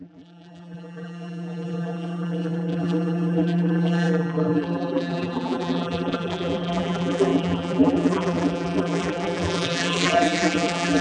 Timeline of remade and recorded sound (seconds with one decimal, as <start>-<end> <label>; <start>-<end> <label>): 0.0-11.0 remade